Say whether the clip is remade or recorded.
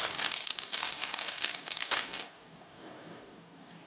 remade